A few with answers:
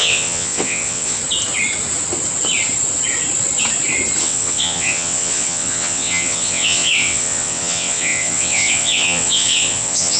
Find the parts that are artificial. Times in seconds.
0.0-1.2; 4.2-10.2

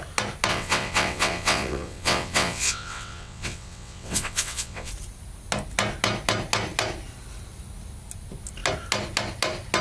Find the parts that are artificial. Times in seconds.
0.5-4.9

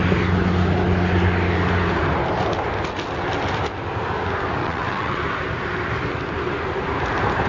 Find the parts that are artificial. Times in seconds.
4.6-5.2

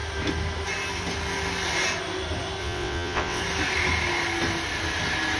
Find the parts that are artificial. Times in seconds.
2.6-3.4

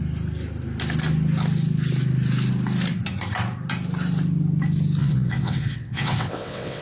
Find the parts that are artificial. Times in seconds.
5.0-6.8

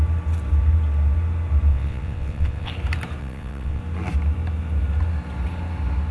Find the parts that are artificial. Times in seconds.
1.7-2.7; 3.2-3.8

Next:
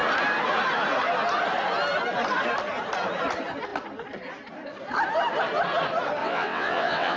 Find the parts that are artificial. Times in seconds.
6.2-7.2

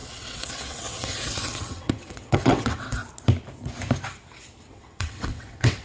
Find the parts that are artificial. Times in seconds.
0.0-3.0; 4.7-5.8